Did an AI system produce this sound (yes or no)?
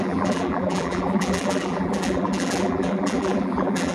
yes